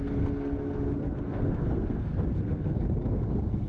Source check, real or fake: fake